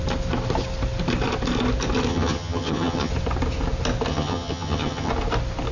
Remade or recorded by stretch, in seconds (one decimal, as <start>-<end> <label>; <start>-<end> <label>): 0.0-2.1 recorded; 2.1-3.1 remade; 3.1-4.1 recorded; 4.1-5.1 remade; 5.1-5.7 recorded